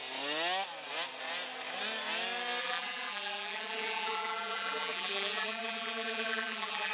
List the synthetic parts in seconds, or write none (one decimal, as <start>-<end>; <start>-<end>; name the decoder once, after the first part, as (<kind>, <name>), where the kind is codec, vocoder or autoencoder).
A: 2.6-6.9 (vocoder, BigVGAN v2)